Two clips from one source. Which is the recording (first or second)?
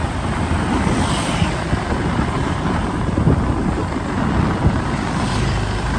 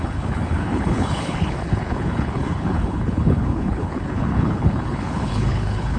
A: first